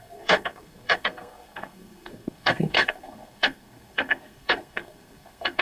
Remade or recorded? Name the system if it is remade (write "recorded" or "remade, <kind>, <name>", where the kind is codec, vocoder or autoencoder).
remade, codec, SNAC